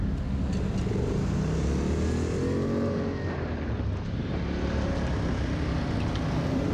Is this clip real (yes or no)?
yes